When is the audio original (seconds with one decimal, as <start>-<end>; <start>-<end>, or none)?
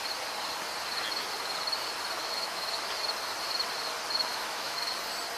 0.0-2.2; 2.7-4.3; 4.9-5.4